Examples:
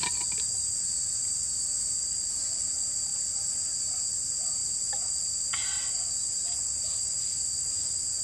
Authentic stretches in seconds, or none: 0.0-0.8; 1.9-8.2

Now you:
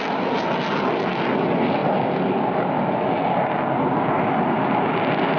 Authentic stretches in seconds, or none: 0.0-5.4

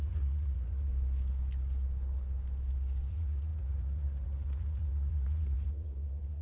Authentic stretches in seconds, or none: 0.9-3.1

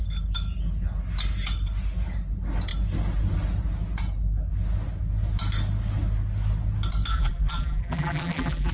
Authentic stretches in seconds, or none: 0.0-7.1

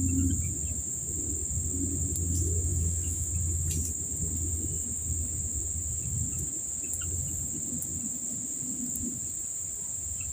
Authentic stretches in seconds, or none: 0.0-2.7; 3.3-10.3

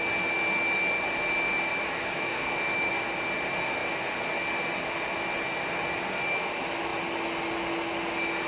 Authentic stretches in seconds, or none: 0.0-1.7; 2.9-8.5